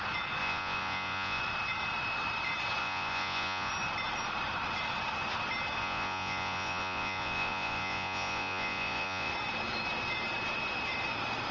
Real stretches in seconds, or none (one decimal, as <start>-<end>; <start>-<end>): 0.0-0.4; 1.4-2.8; 3.7-5.8; 9.3-11.5